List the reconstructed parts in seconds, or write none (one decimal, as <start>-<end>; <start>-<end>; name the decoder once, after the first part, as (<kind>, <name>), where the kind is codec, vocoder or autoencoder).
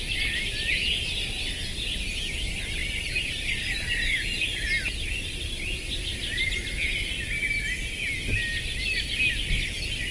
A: 2.8-3.7 (vocoder, BigVGAN v2)